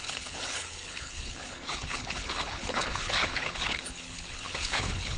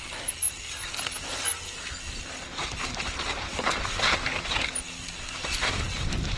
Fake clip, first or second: first